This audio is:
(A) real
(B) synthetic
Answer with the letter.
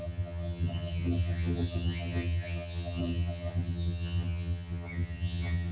B